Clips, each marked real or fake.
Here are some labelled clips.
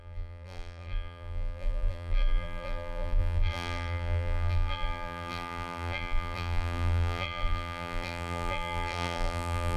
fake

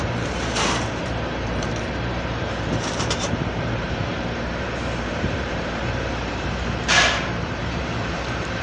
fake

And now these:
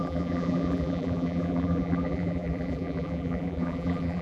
fake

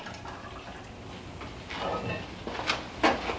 real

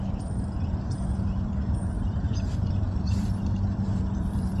fake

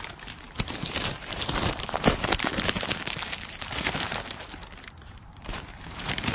fake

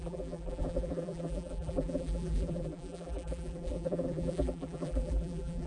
fake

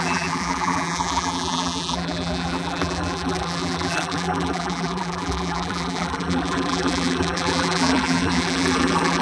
fake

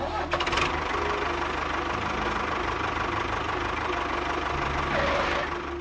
real